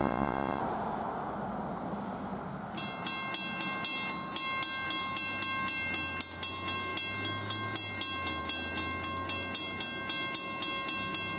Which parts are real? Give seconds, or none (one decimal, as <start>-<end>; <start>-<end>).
0.6-11.4